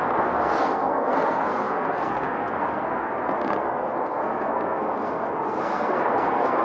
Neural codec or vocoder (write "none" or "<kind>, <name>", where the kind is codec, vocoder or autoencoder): codec, SNAC